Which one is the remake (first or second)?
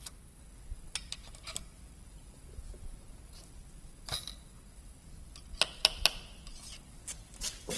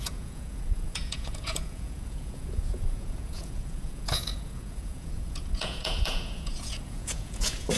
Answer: second